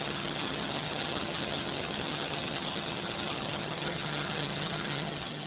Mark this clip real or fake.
fake